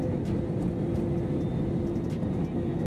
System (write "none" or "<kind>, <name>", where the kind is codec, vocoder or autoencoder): none